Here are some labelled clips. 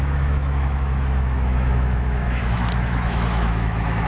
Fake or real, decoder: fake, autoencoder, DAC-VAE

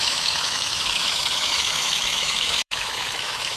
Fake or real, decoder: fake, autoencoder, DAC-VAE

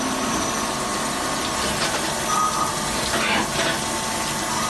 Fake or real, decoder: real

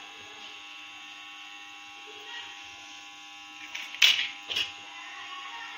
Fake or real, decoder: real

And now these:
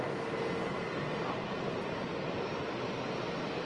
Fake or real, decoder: real